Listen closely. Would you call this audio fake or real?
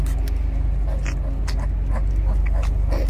real